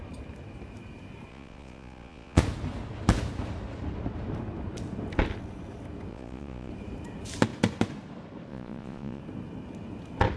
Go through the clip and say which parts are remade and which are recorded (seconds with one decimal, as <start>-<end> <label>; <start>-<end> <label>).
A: 0.0-1.3 recorded; 1.3-2.4 remade; 2.4-6.1 recorded; 6.1-6.7 remade; 6.7-8.5 recorded; 8.5-9.2 remade; 9.2-10.4 recorded